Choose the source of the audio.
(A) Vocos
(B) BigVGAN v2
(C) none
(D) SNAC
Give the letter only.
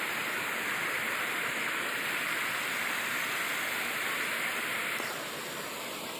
B